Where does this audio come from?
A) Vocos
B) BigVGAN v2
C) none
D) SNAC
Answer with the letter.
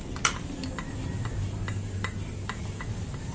C